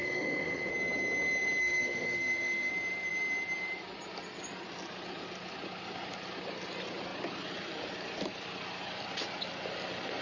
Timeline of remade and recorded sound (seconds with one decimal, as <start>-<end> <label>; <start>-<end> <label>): 0.0-0.7 remade; 0.7-1.6 recorded; 1.6-2.7 remade; 2.7-10.2 recorded